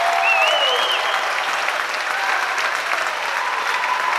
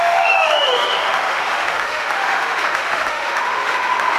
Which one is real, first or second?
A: first